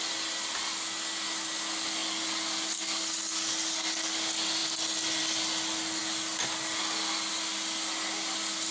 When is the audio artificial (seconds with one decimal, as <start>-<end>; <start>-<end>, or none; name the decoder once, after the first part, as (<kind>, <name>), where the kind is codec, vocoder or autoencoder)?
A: none

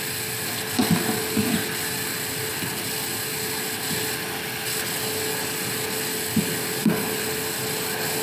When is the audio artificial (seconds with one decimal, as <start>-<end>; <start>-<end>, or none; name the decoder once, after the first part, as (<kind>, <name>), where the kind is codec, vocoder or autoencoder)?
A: none